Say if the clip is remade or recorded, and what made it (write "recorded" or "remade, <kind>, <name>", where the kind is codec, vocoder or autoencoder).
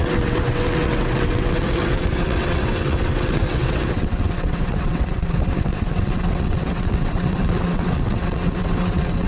remade, vocoder, WaveNeXt